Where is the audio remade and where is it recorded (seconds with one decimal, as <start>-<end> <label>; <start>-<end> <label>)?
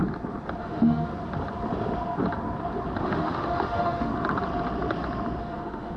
0.0-0.6 recorded; 0.6-1.1 remade; 1.1-3.0 recorded; 3.0-4.1 remade; 4.1-5.4 recorded; 5.4-6.0 remade